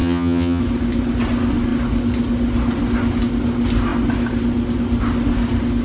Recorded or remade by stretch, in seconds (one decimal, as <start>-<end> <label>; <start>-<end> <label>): 0.0-0.6 remade; 0.6-5.8 recorded